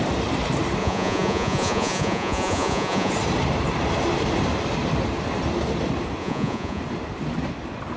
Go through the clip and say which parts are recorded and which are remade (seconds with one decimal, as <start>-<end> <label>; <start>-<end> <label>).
0.0-0.8 recorded; 0.8-3.1 remade; 3.1-6.2 recorded; 6.2-6.8 remade; 6.8-8.0 recorded